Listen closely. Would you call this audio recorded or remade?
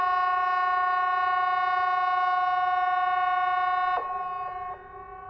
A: recorded